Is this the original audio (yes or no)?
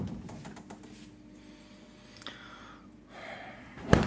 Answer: yes